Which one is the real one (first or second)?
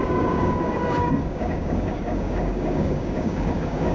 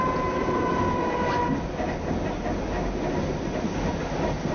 second